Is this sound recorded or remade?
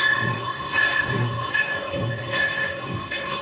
remade